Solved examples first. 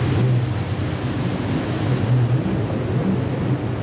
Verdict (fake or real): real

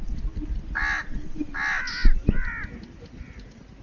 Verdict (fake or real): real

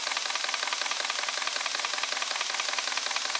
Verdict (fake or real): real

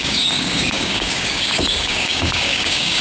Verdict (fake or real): fake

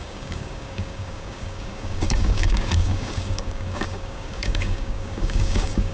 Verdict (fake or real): fake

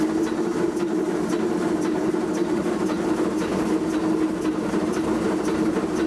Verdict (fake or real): real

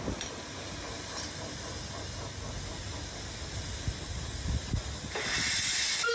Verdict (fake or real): real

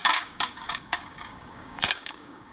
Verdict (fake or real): fake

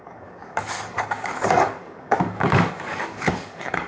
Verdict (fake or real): fake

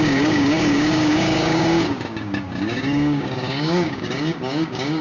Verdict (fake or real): fake